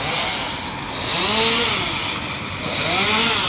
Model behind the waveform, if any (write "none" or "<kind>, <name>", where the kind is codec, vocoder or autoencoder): none